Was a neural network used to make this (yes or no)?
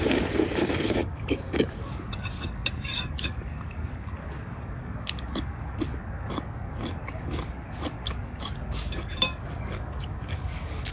yes